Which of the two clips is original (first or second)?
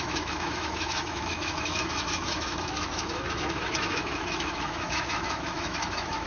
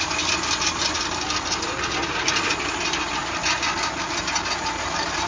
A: second